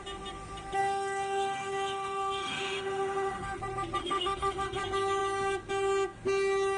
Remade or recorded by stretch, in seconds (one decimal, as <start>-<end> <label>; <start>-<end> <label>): 0.0-0.8 recorded; 0.8-3.6 remade; 3.6-4.0 recorded; 4.0-4.8 remade; 4.8-6.8 recorded